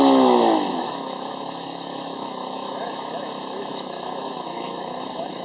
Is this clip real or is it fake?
fake